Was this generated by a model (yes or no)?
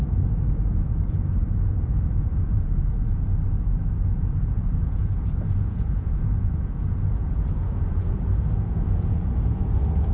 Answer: yes